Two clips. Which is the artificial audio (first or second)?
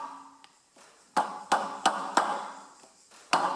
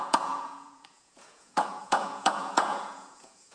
second